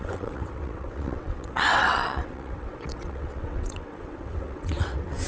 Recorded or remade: remade